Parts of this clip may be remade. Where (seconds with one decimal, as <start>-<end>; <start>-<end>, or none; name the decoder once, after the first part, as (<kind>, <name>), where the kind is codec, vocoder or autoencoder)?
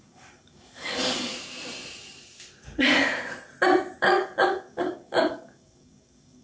0.0-1.3 (codec, DAC); 4.0-6.4